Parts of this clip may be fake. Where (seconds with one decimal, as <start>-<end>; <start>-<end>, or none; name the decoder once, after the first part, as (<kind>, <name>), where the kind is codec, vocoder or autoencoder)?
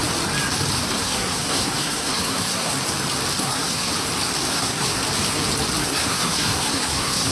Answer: 0.9-2.7 (codec, SNAC); 3.4-3.9; 4.5-5.0; 5.8-7.3